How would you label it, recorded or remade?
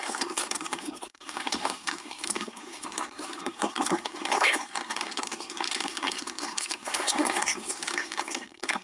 remade